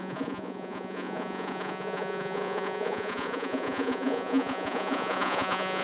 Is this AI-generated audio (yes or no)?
yes